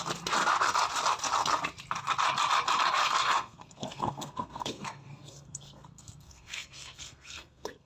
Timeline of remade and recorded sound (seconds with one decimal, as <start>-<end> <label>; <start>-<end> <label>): 0.0-3.0 recorded; 3.0-7.9 remade